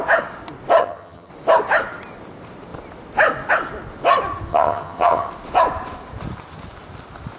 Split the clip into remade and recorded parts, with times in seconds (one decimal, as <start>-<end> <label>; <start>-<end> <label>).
0.0-0.8 recorded; 0.8-1.3 remade; 1.3-4.5 recorded; 4.5-5.3 remade; 5.3-7.4 recorded